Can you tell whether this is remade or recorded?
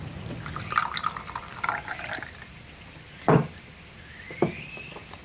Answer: recorded